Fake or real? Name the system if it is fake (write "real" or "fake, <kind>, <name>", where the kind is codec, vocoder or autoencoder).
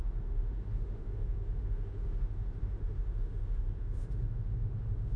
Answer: fake, autoencoder, DAC-VAE